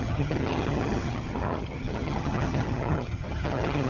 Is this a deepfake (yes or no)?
yes